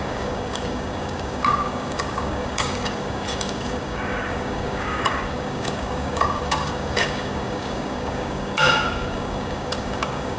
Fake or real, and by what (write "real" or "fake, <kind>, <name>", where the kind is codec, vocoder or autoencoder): fake, codec, DAC